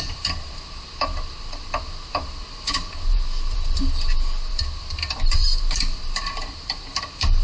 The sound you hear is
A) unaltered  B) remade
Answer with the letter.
B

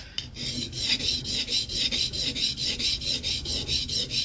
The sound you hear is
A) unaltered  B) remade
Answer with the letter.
A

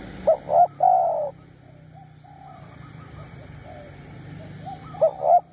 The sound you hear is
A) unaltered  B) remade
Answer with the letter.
A